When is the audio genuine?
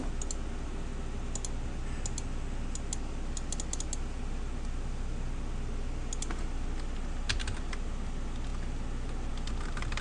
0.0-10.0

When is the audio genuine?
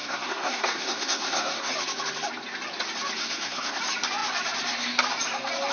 1.7-3.2; 3.8-5.7